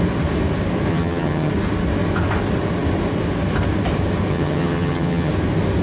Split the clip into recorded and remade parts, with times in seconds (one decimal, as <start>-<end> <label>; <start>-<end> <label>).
0.0-0.9 recorded; 0.9-1.5 remade; 1.5-4.3 recorded; 4.3-5.3 remade; 5.3-5.8 recorded